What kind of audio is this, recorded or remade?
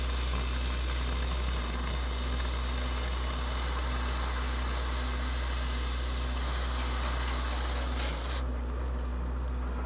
recorded